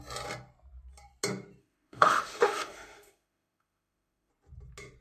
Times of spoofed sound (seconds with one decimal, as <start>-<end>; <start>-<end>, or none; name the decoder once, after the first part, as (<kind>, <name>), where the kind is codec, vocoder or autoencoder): 1.6-4.3 (autoencoder, DAC-VAE)

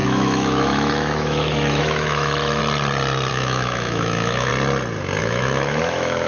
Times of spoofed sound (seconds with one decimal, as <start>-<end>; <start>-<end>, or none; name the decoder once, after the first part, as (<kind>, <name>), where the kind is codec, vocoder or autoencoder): 0.0-2.6 (autoencoder, DAC-VAE); 3.3-4.5; 5.2-6.3

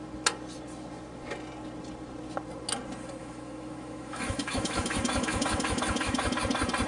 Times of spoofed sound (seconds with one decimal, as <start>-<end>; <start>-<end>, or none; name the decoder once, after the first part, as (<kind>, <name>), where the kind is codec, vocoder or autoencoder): 3.2-6.3 (autoencoder, DAC-VAE)

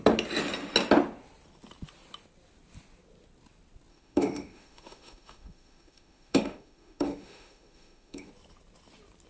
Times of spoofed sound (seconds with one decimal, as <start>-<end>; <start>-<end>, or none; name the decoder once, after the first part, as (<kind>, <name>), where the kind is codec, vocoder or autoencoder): 3.9-8.3 (autoencoder, DAC-VAE)